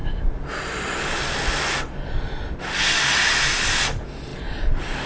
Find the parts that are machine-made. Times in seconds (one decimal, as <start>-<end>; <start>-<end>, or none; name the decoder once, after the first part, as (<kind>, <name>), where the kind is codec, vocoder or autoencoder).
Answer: none